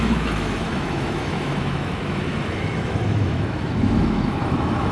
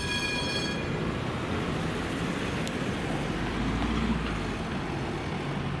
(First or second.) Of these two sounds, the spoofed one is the first